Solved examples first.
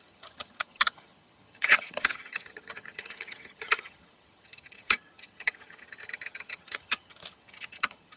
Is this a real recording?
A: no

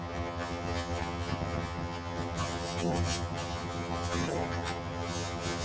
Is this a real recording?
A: no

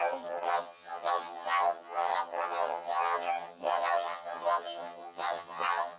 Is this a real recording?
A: no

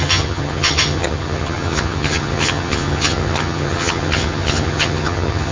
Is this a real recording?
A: no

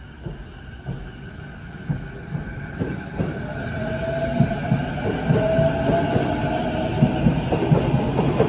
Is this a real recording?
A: yes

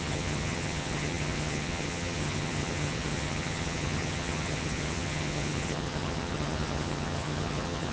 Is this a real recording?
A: no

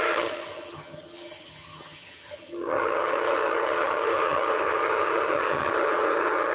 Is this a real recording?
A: no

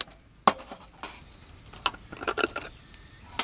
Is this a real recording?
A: yes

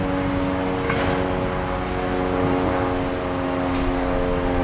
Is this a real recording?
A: yes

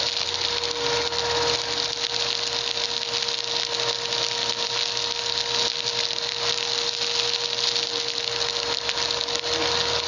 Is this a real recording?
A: yes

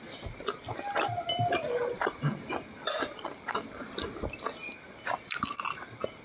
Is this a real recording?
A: yes